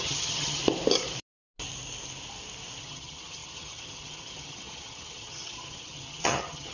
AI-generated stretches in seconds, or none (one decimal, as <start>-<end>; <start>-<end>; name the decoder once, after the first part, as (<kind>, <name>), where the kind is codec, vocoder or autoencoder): 0.0-0.6 (vocoder, HiFi-GAN); 2.8-6.7